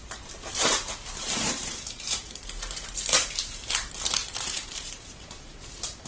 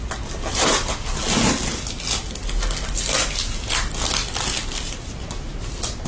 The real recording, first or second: second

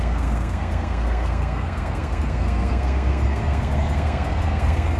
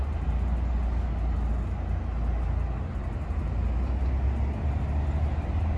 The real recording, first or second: second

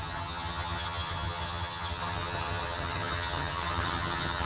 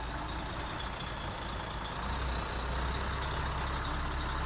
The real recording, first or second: second